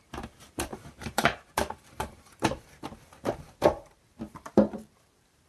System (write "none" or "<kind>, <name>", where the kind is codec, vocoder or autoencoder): vocoder, BigVGAN v2